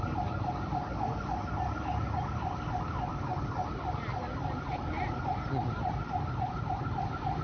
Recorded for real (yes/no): yes